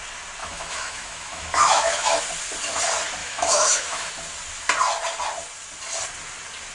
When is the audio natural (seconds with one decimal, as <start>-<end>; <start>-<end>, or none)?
0.0-0.4; 2.2-3.2; 4.1-6.7

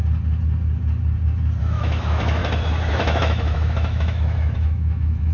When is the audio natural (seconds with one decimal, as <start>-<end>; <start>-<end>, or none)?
0.0-1.6; 2.4-2.9

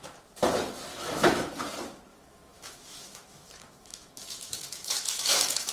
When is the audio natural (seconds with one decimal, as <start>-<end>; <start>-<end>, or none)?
0.0-0.9; 1.5-2.1

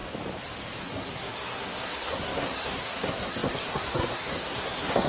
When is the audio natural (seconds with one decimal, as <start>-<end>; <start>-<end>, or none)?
0.0-0.8

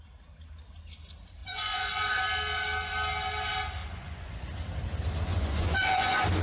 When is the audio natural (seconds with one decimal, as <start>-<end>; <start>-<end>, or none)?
0.0-1.4; 2.2-3.8; 4.4-5.3

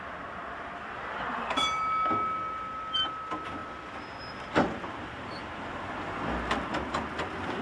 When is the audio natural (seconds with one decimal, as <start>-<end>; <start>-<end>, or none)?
0.0-7.6

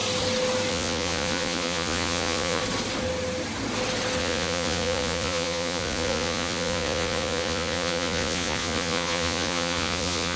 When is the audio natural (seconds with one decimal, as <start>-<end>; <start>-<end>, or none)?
0.0-0.7; 2.6-4.2

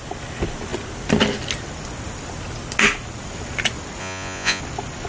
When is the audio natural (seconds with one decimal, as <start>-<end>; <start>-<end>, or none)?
0.0-4.0; 4.6-5.1